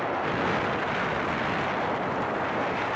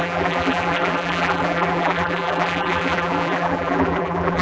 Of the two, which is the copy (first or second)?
second